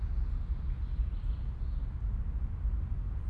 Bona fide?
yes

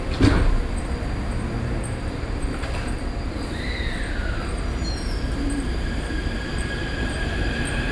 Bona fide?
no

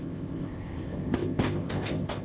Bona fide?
no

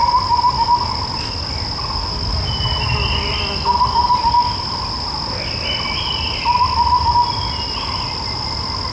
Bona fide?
yes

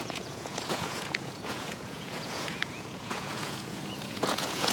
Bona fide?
no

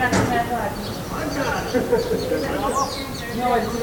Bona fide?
yes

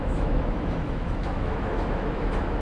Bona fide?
no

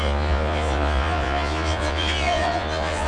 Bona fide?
no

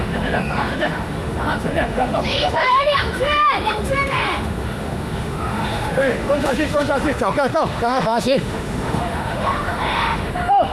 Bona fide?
no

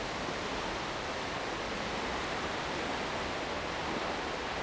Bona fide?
yes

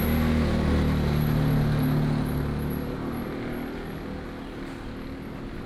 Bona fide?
yes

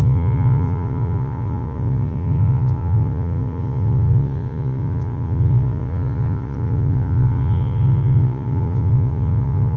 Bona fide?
no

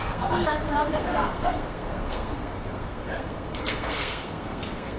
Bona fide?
no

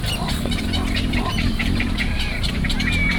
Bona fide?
no